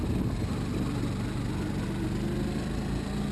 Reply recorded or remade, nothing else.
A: recorded